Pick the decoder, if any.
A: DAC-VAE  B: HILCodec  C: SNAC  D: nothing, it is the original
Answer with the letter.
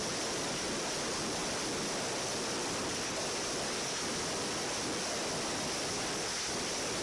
D